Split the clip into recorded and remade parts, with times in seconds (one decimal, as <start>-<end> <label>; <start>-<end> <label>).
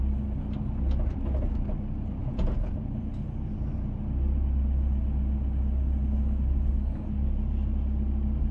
0.0-2.2 recorded; 2.2-3.1 remade; 3.1-8.5 recorded